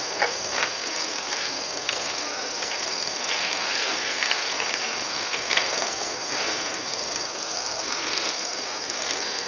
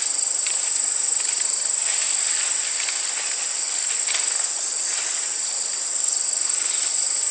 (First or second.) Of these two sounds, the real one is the second